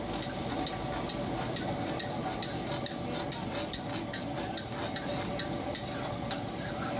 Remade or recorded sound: recorded